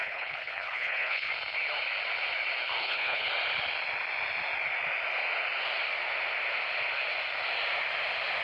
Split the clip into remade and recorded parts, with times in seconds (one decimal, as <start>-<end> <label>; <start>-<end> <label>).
0.0-1.3 remade; 1.3-2.8 recorded; 2.8-3.3 remade; 3.3-8.4 recorded